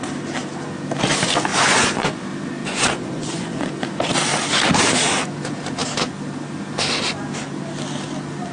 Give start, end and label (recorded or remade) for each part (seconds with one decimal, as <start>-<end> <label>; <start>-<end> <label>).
0.0-1.5 recorded; 1.5-2.2 remade; 2.2-2.6 recorded; 2.6-3.7 remade; 3.7-8.5 recorded